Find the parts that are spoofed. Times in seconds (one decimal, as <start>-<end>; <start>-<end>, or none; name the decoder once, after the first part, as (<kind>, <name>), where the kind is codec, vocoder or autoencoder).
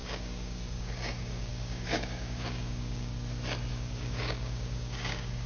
0.0-3.1 (codec, DAC); 3.7-5.5